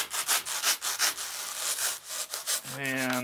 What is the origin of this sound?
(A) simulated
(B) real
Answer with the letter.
B